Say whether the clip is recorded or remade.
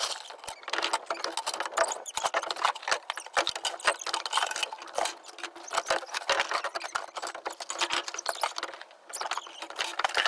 recorded